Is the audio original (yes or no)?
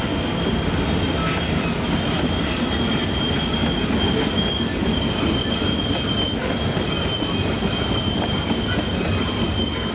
yes